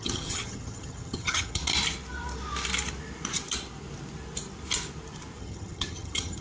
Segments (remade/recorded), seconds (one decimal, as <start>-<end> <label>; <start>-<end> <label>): 0.0-1.6 remade; 1.6-5.4 recorded; 5.4-6.4 remade